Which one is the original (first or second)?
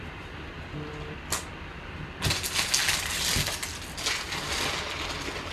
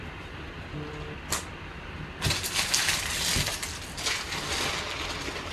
first